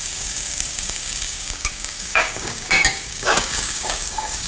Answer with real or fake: fake